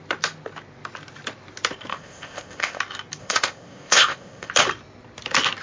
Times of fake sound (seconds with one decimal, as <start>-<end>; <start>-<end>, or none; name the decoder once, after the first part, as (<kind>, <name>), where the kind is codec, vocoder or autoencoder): 1.9-2.8 (codec, ZipCodec); 3.2-4.5